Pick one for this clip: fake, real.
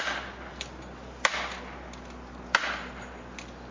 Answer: real